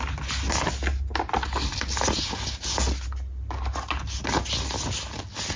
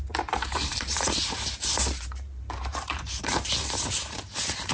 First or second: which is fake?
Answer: second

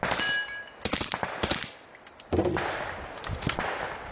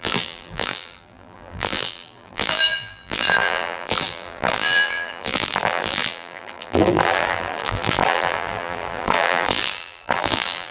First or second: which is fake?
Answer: second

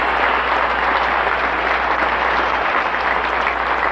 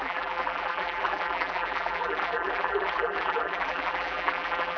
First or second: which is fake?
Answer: second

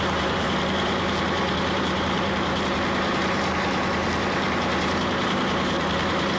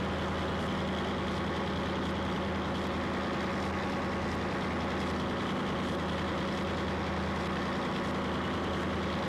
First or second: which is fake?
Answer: first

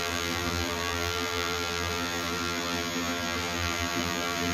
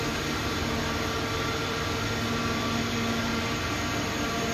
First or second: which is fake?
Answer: first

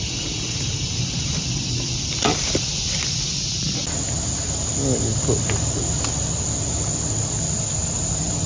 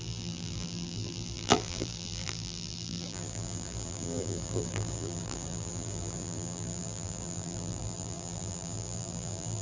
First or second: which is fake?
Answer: second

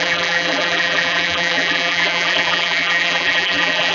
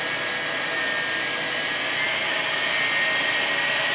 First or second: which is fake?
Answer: first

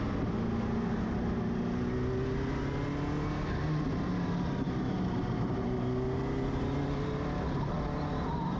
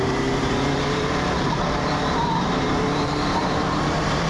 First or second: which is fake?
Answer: second